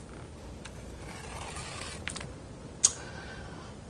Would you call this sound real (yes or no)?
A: yes